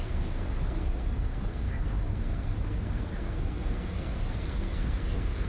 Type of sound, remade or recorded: remade